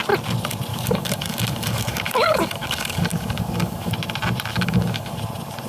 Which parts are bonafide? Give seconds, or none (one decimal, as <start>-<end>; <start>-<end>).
0.0-0.7; 3.9-4.5; 5.2-5.7